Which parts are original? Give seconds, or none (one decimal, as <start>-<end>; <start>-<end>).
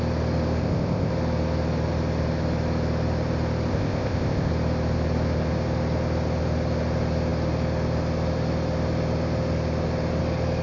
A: 0.0-0.6; 1.1-3.7; 4.5-10.6